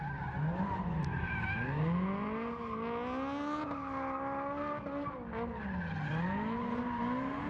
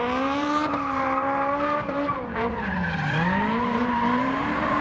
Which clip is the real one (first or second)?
first